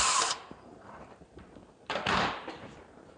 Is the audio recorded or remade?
remade